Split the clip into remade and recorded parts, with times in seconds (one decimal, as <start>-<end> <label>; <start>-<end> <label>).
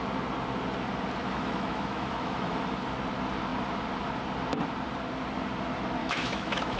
0.0-1.2 recorded; 1.2-2.6 remade; 2.6-6.0 recorded; 6.0-6.8 remade